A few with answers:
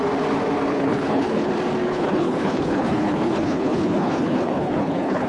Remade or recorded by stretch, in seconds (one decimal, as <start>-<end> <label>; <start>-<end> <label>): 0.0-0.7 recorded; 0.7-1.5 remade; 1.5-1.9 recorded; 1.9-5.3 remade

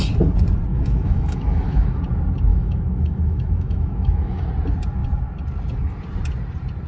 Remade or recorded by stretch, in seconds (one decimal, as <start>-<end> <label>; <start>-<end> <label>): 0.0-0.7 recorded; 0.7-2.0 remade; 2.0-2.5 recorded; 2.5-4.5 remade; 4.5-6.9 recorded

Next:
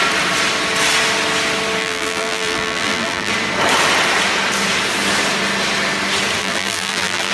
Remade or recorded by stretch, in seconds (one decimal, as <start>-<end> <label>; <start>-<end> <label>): 0.0-1.8 recorded; 1.8-3.3 remade; 3.3-6.4 recorded; 6.4-7.3 remade

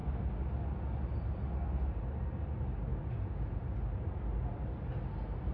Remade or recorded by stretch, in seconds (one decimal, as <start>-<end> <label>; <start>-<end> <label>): 0.0-5.5 recorded

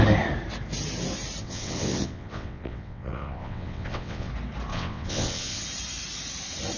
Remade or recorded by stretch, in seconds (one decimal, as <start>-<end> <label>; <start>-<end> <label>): 0.0-1.4 recorded; 1.4-4.3 remade; 4.3-4.7 recorded; 4.7-5.6 remade; 5.6-6.8 recorded

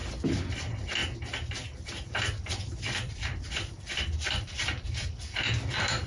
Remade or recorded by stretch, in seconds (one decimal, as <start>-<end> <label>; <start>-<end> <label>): 0.0-0.5 recorded; 0.5-1.0 remade; 1.0-2.1 recorded; 2.1-6.1 remade

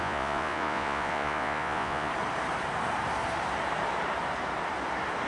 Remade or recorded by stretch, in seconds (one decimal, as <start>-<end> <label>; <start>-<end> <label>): 0.0-2.1 remade; 2.1-5.3 recorded

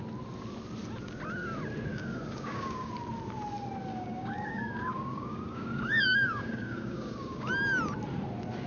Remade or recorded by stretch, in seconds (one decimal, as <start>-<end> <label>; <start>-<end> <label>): 0.0-1.9 recorded; 1.9-2.9 remade; 2.9-3.9 recorded; 3.9-7.5 remade; 7.5-8.7 recorded